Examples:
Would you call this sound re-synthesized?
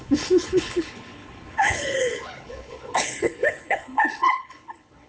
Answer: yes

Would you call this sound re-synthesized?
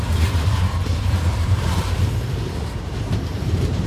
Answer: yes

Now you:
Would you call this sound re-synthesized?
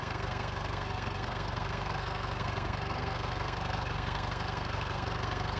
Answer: yes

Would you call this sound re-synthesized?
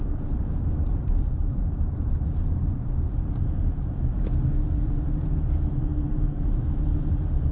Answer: yes